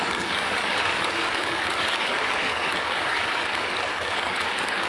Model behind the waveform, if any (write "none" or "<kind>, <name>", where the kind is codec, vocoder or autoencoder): codec, DAC